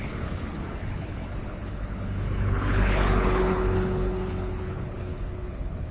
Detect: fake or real fake